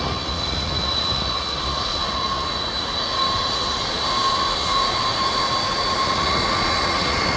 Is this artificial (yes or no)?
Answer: yes